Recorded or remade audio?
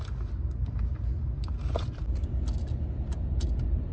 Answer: recorded